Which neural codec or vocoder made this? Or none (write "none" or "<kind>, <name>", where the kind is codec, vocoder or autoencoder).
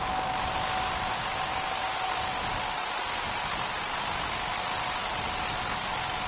none